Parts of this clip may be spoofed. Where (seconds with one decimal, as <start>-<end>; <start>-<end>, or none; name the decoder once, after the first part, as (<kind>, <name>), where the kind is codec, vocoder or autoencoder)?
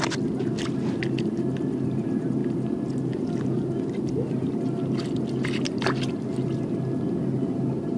none